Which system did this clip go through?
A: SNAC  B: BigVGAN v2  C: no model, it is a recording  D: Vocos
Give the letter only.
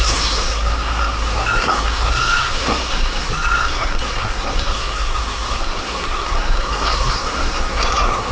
A